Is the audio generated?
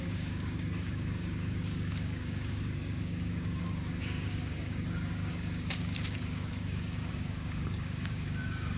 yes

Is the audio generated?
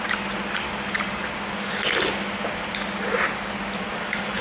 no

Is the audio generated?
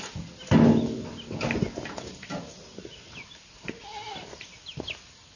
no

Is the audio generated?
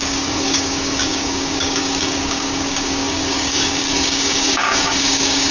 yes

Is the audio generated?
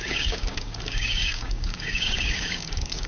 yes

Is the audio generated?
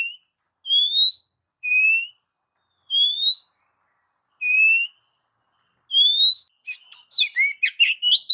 no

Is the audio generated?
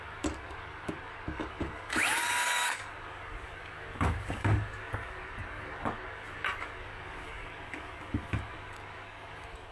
yes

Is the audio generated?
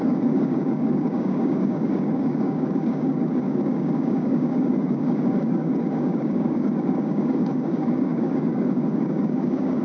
yes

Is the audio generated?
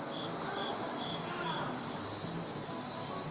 no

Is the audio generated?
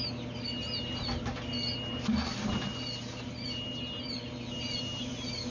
no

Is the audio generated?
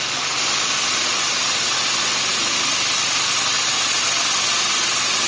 no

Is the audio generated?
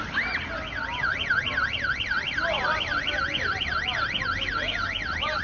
no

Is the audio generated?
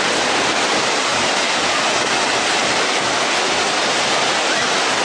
no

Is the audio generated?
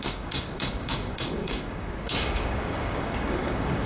yes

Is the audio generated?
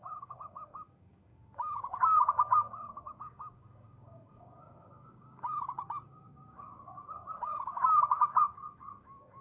yes